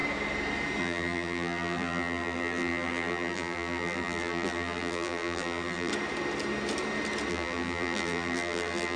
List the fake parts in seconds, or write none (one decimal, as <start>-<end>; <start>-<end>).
0.8-5.9; 7.3-9.0